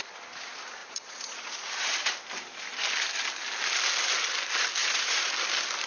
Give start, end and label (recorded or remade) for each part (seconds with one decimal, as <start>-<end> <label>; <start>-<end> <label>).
0.0-0.8 recorded; 0.8-1.7 remade; 1.7-4.8 recorded; 4.8-5.3 remade; 5.3-5.9 recorded